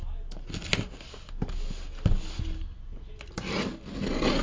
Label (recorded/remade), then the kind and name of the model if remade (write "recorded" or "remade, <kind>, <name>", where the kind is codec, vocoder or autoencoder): recorded